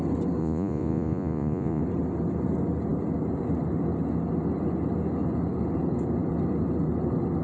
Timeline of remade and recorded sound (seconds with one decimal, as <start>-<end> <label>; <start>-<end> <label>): 0.0-0.4 recorded; 0.4-1.8 remade; 1.8-7.4 recorded